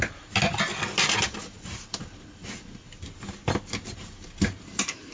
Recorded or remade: recorded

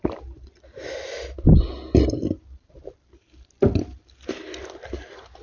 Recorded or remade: recorded